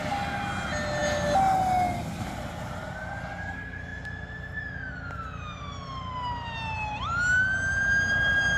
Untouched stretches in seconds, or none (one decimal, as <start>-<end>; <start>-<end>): 0.0-8.6